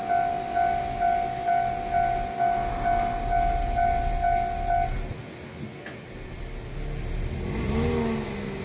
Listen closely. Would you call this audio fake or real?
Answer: real